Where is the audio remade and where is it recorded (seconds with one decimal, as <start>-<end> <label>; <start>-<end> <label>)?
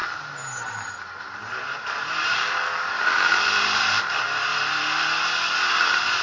0.0-1.2 recorded; 1.2-4.5 remade; 4.5-5.8 recorded; 5.8-6.2 remade